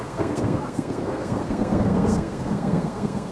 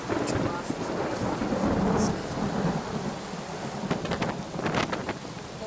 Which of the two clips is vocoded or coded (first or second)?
first